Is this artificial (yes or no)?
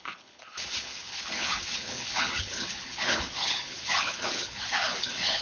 yes